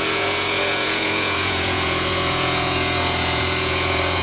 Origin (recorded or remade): remade